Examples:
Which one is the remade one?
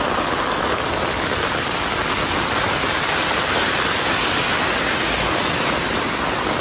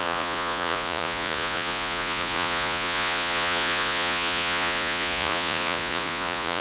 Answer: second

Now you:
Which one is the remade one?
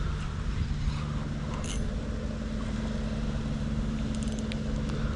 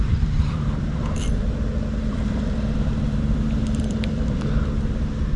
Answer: second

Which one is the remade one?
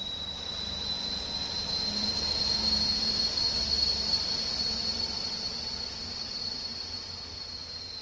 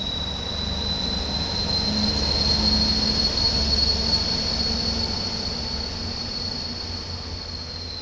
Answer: first